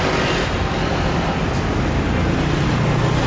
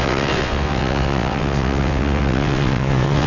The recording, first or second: first